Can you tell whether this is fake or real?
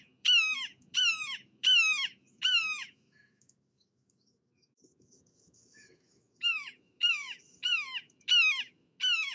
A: fake